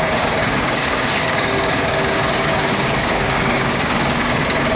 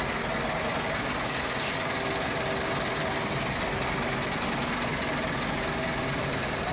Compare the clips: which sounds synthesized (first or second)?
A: first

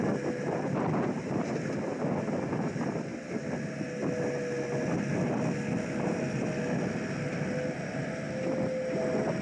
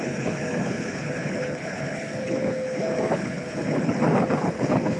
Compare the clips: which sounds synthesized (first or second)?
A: second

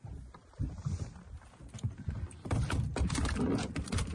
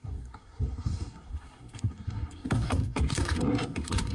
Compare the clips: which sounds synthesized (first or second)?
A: second